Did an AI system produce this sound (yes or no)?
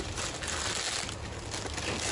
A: no